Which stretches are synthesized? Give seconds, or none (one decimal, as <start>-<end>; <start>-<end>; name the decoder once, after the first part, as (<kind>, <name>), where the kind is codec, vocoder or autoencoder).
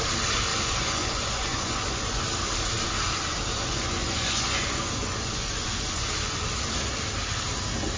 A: 0.5-2.2 (vocoder, Vocos); 3.5-6.5